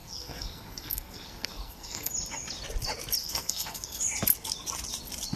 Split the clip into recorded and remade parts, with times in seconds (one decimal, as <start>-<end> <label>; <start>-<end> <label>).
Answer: 0.0-2.1 remade; 2.1-3.2 recorded; 3.2-4.0 remade; 4.0-5.4 recorded